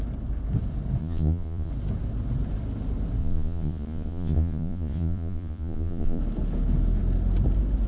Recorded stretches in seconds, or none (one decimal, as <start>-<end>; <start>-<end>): 0.0-1.0; 1.7-3.2; 6.2-7.9